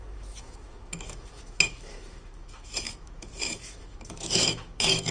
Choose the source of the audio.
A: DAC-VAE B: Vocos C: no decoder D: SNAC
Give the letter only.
A